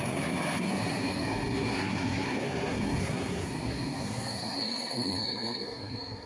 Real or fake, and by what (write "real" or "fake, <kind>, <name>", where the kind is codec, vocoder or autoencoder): fake, codec, SNAC